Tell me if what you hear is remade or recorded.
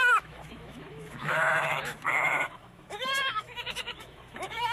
remade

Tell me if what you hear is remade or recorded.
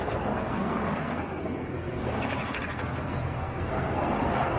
remade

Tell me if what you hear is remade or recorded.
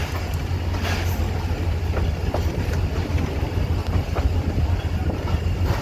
recorded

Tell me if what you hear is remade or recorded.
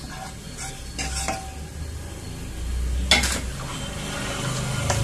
recorded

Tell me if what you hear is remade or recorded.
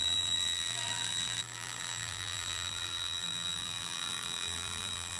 remade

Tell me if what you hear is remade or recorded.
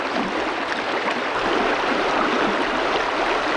recorded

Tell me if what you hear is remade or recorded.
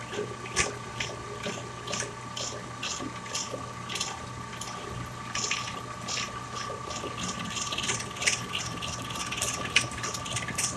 recorded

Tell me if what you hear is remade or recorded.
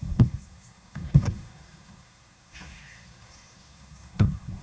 remade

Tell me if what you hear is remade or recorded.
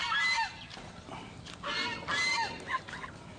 recorded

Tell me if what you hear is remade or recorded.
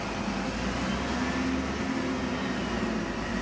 recorded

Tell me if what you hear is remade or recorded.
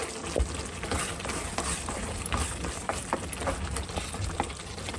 recorded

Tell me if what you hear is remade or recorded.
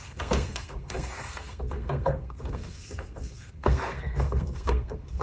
remade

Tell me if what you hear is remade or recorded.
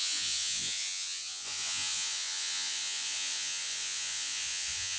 remade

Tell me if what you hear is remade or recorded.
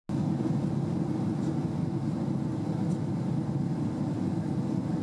recorded